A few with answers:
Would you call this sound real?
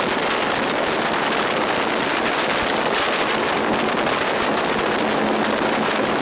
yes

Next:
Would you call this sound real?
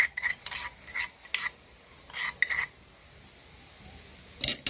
yes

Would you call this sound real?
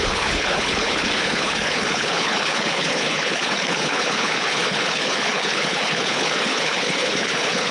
no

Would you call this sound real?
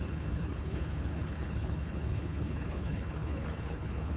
no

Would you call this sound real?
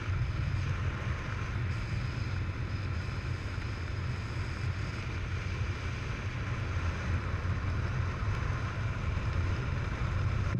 yes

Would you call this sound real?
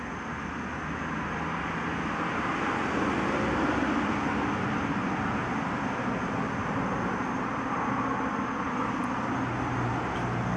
yes